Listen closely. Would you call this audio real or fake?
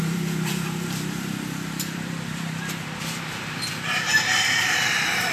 fake